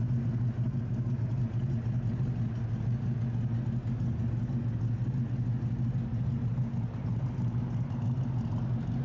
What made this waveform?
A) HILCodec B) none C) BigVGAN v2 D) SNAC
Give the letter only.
B